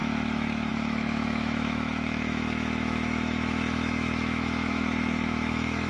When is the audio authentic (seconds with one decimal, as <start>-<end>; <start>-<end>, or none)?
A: none